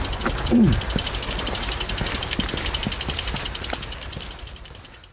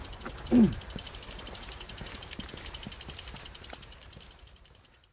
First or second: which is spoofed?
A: second